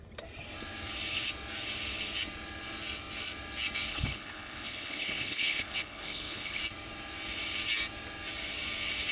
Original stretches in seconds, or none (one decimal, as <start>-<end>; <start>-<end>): 0.0-3.9; 6.6-9.1

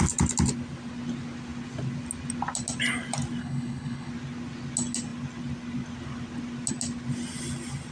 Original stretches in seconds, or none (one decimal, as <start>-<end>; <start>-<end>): 0.0-3.4; 4.1-7.9

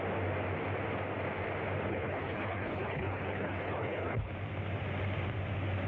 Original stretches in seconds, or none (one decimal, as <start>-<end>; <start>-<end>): 0.0-1.9; 4.3-5.9

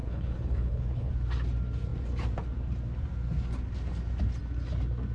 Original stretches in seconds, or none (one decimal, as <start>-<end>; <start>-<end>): 1.1-5.1